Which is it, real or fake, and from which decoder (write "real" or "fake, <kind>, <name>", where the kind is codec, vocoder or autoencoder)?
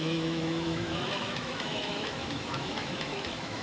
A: fake, autoencoder, DAC-VAE